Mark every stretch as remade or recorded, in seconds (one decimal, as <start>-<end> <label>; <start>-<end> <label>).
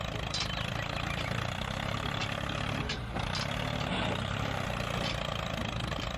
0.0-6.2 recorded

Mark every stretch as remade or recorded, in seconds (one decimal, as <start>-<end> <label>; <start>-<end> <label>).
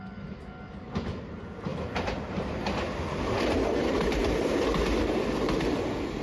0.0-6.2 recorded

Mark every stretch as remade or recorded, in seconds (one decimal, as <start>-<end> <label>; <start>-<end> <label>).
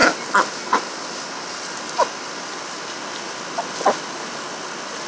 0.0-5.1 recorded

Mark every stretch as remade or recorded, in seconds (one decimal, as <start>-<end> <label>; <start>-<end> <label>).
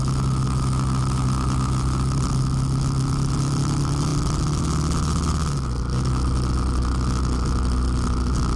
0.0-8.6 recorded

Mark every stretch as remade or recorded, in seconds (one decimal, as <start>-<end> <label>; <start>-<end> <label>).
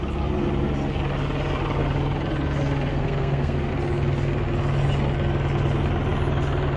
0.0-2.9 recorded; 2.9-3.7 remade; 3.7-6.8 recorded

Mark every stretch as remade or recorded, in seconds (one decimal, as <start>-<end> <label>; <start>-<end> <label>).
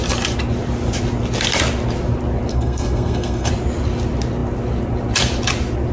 0.0-2.5 recorded; 2.5-3.5 remade; 3.5-5.9 recorded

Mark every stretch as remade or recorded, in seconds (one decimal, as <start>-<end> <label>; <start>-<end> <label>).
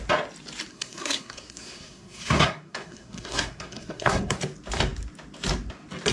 0.0-0.7 recorded; 0.7-4.4 remade; 4.4-6.1 recorded